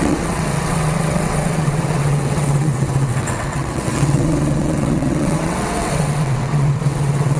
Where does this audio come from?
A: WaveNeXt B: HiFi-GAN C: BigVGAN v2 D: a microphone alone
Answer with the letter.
A